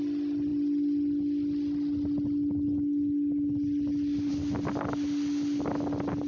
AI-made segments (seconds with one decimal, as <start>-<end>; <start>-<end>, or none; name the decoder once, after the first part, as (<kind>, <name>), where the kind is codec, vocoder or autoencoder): none

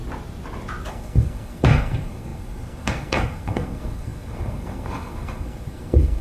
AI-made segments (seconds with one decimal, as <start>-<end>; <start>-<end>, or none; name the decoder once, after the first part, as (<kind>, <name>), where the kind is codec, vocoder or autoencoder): 0.9-6.2 (codec, SNAC)

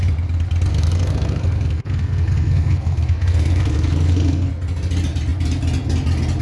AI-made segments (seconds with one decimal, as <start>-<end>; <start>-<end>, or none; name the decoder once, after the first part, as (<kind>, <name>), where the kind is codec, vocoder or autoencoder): 0.7-4.5 (codec, SNAC)

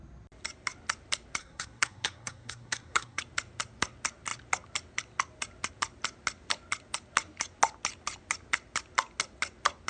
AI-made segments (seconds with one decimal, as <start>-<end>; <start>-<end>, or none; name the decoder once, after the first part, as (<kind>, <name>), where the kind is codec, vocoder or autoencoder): 1.4-3.2 (codec, SNAC)